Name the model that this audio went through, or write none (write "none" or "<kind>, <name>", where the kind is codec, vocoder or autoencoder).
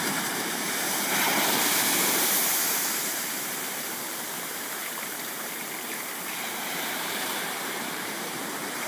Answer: vocoder, BigVGAN v2